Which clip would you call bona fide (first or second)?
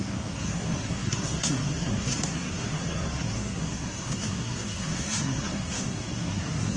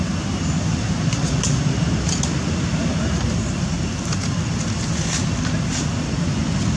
second